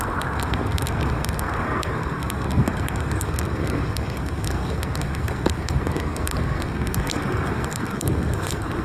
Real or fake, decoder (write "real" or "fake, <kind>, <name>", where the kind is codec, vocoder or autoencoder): fake, codec, SNAC